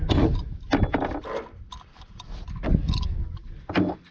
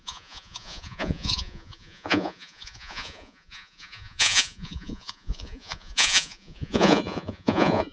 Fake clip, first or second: second